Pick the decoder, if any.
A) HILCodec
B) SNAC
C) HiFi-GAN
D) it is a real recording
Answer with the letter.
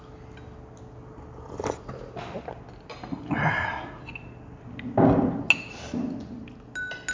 D